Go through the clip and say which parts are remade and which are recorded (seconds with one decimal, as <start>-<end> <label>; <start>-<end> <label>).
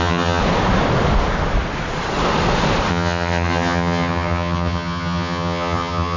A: 0.0-0.4 remade; 0.4-2.9 recorded; 2.9-6.2 remade